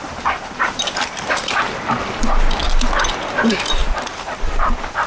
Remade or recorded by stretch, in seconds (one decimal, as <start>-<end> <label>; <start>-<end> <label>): 0.0-1.4 remade; 1.4-3.8 recorded; 3.8-4.4 remade; 4.4-5.1 recorded